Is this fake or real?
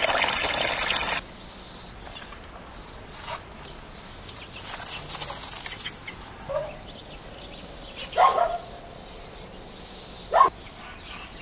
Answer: real